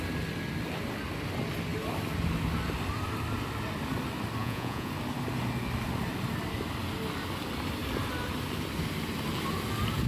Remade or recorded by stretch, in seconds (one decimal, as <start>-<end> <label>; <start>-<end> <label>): 0.0-4.4 recorded; 4.4-4.9 remade; 4.9-10.1 recorded